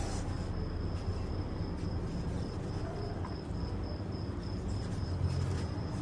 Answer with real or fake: real